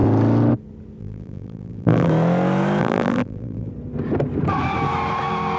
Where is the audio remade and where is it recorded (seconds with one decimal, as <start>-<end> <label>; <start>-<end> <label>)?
0.0-1.0 recorded; 1.0-2.1 remade; 2.1-2.8 recorded; 2.8-3.7 remade; 3.7-5.6 recorded